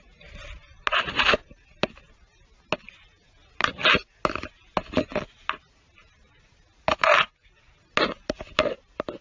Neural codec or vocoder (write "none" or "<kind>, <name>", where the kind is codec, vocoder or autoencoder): none